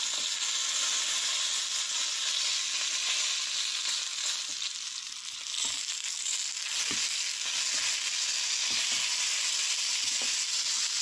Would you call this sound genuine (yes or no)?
yes